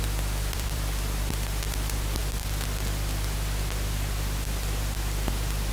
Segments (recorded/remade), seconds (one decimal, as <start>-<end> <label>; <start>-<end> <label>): 0.0-2.2 remade; 2.2-5.7 recorded